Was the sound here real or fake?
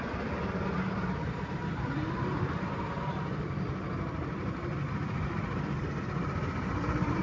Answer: fake